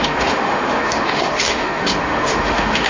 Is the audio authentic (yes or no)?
no